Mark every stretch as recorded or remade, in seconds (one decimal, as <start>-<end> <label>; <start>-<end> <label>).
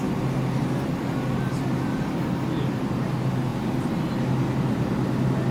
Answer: 0.0-5.5 recorded